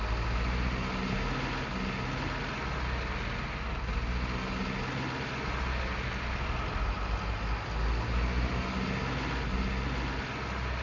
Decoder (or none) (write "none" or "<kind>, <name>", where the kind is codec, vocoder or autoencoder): none